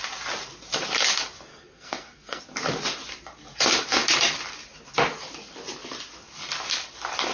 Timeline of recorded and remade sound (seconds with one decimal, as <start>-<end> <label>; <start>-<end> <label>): 0.0-1.5 recorded; 1.5-2.4 remade; 2.4-7.3 recorded